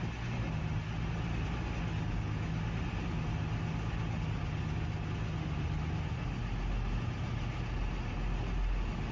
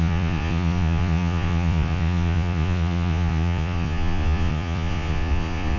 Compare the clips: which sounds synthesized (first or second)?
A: second